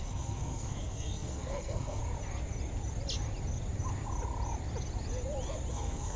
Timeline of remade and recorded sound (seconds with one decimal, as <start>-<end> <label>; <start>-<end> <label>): 0.0-2.0 remade; 2.0-5.7 recorded; 5.7-6.2 remade